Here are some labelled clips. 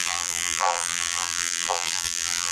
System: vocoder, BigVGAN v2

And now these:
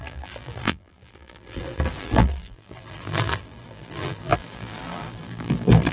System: vocoder, BigVGAN v2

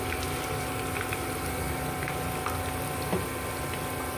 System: none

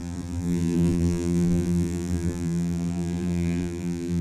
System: vocoder, BigVGAN v2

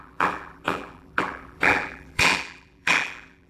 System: vocoder, BigVGAN v2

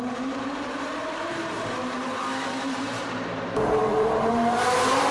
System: vocoder, BigVGAN v2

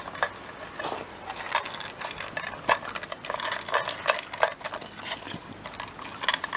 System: none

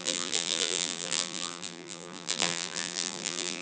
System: vocoder, BigVGAN v2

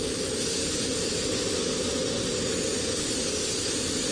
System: none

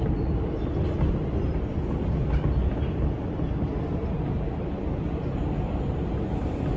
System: none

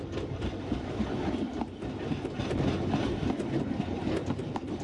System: vocoder, BigVGAN v2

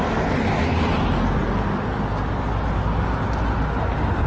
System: none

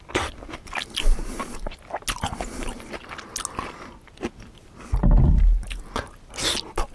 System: none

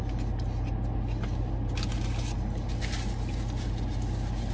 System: none